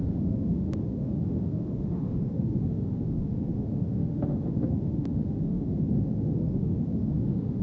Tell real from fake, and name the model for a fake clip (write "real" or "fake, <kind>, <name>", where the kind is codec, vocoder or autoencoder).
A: fake, autoencoder, DAC-VAE